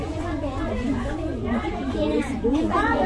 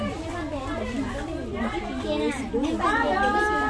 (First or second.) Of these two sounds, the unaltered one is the second